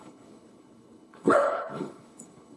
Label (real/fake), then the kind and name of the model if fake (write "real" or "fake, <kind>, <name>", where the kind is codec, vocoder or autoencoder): fake, codec, HILCodec